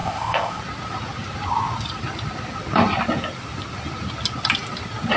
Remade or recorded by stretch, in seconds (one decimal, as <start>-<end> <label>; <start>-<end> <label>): 0.0-0.6 remade; 0.6-5.2 recorded